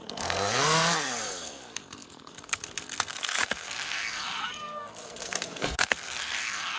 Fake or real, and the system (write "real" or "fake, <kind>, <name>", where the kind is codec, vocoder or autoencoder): fake, codec, SNAC